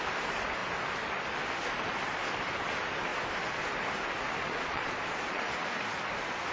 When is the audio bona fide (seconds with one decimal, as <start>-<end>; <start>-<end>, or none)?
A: 0.0-4.4; 5.4-6.5

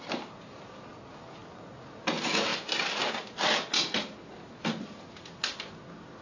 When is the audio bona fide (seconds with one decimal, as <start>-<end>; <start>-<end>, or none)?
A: 0.0-6.2